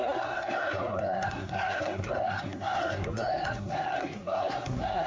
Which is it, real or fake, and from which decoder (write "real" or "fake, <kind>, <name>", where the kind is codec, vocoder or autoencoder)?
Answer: fake, codec, SNAC